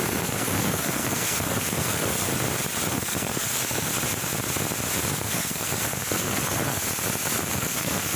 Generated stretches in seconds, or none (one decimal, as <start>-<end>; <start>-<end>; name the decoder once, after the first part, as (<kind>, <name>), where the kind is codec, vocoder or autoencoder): 0.0-2.3 (codec, SNAC); 2.9-3.9; 5.0-6.8; 7.5-8.2